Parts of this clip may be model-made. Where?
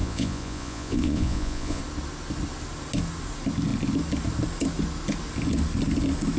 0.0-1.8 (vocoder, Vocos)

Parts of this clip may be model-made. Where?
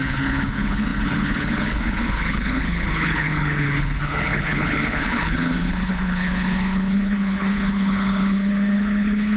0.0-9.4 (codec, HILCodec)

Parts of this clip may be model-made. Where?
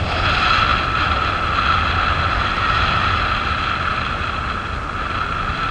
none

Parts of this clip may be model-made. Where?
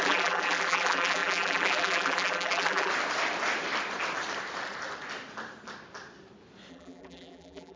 0.0-2.9 (vocoder, BigVGAN v2); 6.7-7.8